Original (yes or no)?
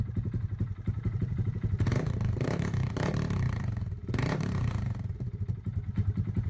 no